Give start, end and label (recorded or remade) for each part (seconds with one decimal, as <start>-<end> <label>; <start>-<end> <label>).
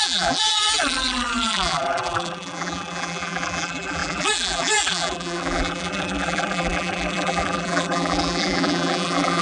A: 0.0-9.4 remade